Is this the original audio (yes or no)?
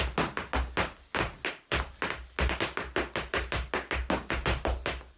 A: yes